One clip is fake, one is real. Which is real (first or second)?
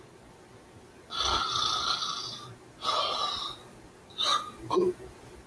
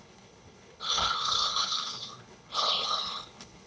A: first